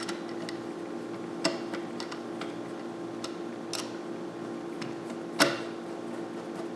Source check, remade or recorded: recorded